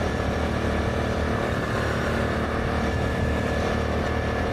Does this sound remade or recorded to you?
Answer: remade